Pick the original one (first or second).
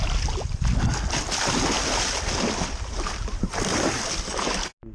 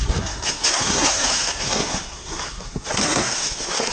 first